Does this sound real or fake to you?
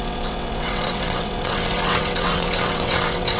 fake